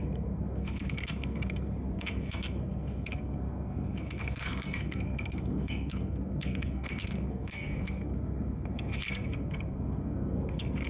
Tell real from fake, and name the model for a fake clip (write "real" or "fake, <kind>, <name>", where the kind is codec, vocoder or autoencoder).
fake, codec, SNAC